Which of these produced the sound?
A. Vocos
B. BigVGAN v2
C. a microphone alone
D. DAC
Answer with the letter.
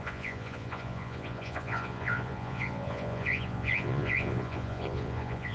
A